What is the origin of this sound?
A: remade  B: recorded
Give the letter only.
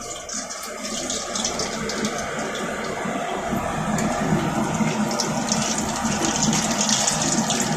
B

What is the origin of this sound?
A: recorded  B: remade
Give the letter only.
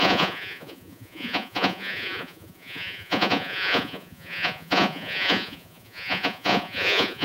B